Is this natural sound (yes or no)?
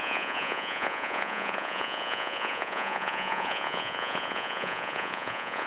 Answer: no